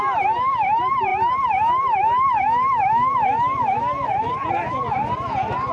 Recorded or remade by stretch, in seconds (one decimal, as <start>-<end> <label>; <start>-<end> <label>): 0.0-5.7 recorded